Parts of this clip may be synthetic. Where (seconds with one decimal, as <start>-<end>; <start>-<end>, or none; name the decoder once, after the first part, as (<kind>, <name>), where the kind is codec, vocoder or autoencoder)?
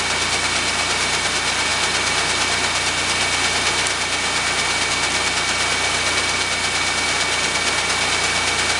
none